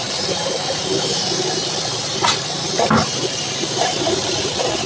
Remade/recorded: remade